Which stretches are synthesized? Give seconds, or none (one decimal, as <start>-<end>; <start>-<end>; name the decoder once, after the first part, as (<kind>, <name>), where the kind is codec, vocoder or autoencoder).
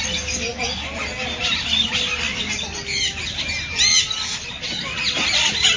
none